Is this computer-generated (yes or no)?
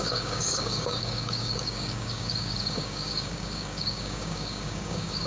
yes